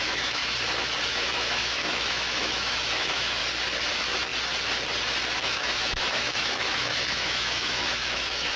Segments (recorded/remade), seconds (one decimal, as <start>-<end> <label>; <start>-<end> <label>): 0.0-0.4 remade; 0.4-1.1 recorded; 1.1-3.4 remade; 3.4-3.9 recorded; 3.9-4.3 remade; 4.3-5.4 recorded; 5.4-8.6 remade